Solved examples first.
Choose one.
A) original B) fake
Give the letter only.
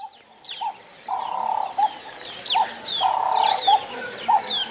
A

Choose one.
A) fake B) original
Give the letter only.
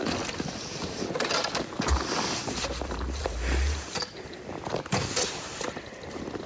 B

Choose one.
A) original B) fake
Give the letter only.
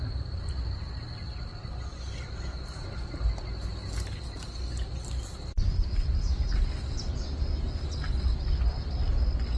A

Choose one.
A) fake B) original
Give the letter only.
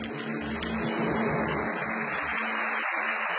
B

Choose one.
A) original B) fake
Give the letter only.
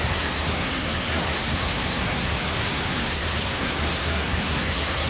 B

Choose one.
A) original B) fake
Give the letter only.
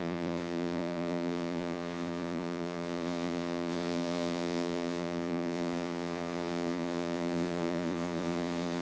B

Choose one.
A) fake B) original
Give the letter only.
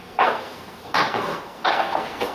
A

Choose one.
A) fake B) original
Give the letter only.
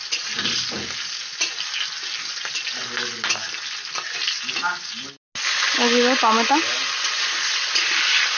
B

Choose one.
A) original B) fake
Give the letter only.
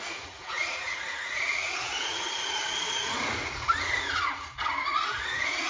B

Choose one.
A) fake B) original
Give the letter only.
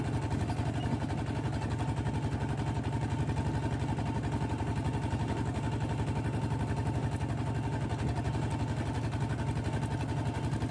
B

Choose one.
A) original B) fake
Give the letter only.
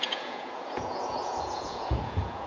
B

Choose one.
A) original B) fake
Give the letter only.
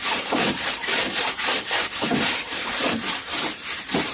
B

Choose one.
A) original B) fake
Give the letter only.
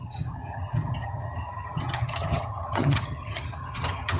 B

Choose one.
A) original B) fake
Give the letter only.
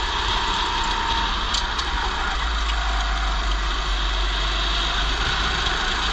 A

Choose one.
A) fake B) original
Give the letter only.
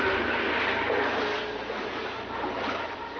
B